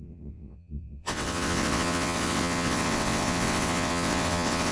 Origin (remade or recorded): remade